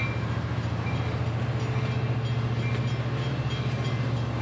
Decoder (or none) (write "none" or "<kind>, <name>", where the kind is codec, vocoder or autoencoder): none